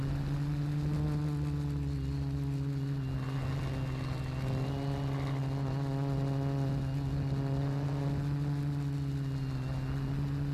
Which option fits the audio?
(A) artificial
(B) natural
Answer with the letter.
B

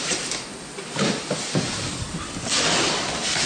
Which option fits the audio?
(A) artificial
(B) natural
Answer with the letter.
B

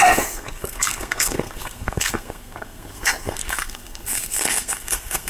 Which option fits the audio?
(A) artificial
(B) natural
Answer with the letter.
A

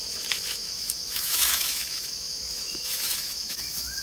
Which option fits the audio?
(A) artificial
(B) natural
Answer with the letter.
A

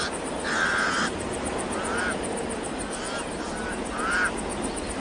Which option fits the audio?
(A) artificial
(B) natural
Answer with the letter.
B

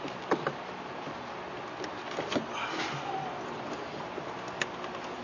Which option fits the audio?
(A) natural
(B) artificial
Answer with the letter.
A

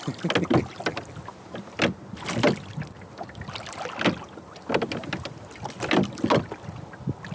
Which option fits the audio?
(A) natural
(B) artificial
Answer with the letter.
A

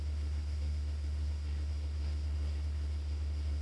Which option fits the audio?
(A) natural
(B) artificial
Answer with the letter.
B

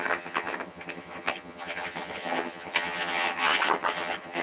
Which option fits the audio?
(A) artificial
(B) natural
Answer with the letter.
A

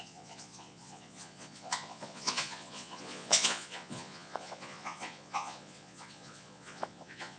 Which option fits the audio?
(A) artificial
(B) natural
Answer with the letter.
A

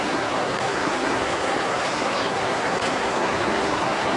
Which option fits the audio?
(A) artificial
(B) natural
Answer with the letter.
A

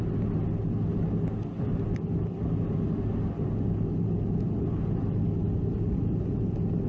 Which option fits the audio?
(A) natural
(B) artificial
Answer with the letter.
A